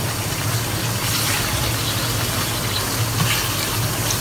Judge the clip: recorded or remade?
recorded